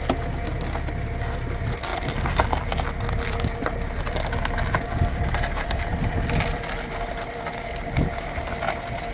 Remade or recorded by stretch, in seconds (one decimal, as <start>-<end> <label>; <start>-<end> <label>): 0.0-1.9 recorded; 1.9-6.6 remade; 6.6-9.1 recorded